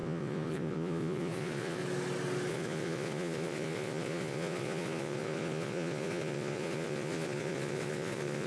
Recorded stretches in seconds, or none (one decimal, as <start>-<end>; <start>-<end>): 1.8-2.5